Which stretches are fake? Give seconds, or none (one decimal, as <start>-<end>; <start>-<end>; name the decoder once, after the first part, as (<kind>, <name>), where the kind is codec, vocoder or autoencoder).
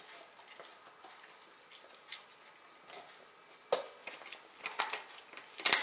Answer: none